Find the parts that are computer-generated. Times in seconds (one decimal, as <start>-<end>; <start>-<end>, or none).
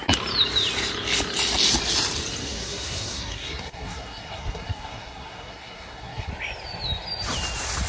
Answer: 2.4-6.3